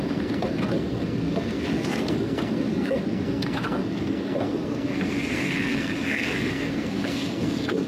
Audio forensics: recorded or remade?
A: remade